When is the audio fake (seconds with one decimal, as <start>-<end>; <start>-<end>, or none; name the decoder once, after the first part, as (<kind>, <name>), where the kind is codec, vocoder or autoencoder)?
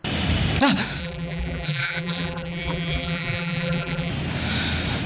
1.0-4.1 (vocoder, BigVGAN v2)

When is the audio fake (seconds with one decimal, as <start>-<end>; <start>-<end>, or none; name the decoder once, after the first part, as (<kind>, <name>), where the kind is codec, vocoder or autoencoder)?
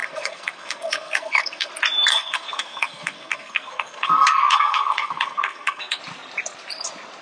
0.0-1.7 (codec, SNAC); 2.1-6.0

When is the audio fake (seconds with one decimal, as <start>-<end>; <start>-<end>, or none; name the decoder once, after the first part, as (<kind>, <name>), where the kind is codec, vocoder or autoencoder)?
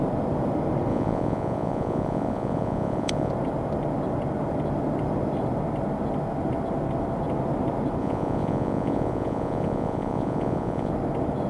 0.9-3.3 (vocoder, Vocos); 8.0-10.9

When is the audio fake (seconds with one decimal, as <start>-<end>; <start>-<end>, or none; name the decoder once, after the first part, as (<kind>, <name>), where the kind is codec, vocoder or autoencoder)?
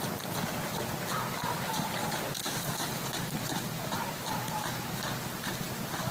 none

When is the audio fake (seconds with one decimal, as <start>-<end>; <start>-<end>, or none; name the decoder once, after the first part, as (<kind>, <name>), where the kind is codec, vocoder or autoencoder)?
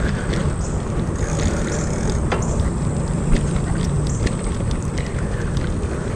none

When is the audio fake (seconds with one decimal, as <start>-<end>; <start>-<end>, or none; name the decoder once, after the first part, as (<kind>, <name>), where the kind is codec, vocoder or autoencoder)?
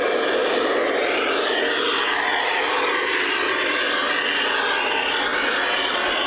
0.4-3.8 (vocoder, BigVGAN v2); 5.3-6.3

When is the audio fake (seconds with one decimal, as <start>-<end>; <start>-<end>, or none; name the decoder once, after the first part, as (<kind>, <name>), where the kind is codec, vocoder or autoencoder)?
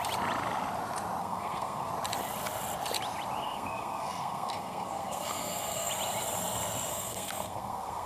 1.2-1.9 (codec, SNAC); 3.4-5.9; 6.9-8.1